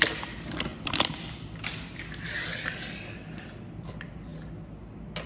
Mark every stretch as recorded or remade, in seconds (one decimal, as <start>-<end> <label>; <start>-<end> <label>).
0.0-5.3 recorded